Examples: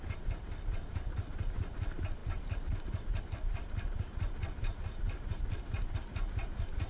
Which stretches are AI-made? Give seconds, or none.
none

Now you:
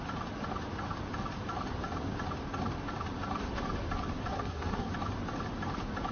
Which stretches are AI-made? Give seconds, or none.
4.3-4.9 (codec, SNAC)

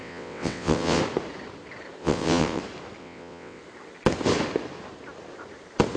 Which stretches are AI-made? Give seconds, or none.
0.0-1.0 (vocoder, WaveNeXt); 2.0-2.6; 3.0-3.6

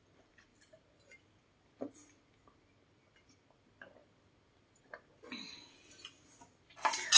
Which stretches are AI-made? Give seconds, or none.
none

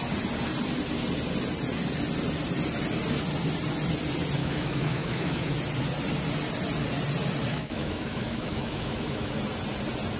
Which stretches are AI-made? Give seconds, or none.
4.4-5.5 (autoencoder, DAC-VAE); 7.5-9.4

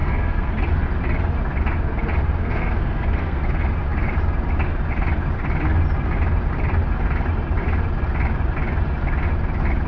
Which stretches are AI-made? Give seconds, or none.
0.0-0.5 (codec, SNAC); 2.4-3.4

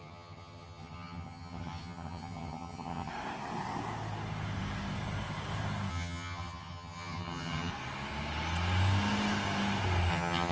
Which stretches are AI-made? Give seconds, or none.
0.0-3.1 (vocoder, HiFi-GAN); 5.9-7.7; 10.1-10.5

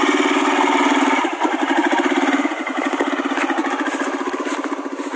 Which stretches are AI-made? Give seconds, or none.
1.8-3.1 (vocoder, BigVGAN v2)